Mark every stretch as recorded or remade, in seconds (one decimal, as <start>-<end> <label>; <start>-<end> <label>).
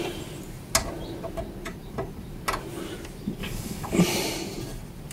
0.0-3.4 recorded; 3.4-4.0 remade; 4.0-5.1 recorded